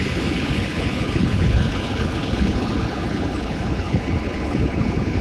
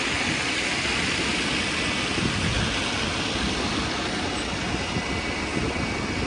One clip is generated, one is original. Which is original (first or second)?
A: second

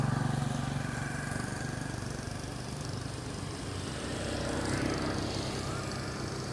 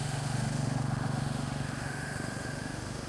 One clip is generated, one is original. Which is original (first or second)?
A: first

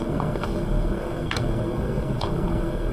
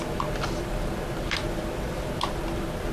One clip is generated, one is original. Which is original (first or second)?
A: second